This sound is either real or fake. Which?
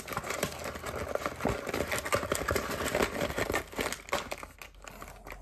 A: real